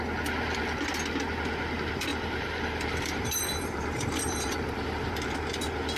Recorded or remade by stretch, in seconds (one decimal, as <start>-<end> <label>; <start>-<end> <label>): 0.0-2.1 recorded; 2.1-5.1 remade; 5.1-6.0 recorded